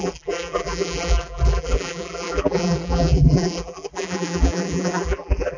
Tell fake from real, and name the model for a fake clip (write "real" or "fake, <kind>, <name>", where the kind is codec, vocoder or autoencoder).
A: fake, vocoder, BigVGAN v2